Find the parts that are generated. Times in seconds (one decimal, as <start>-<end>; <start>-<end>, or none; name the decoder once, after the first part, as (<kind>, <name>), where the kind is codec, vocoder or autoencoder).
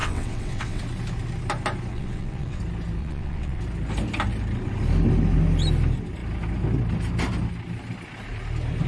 0.0-0.8 (vocoder, WaveNeXt); 1.9-2.6; 3.0-3.6